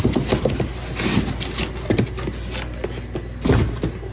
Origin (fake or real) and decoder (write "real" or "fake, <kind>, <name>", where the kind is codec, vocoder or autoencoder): real